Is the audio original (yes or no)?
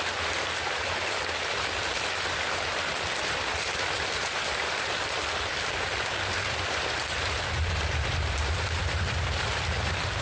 no